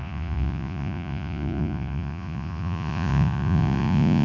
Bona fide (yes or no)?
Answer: no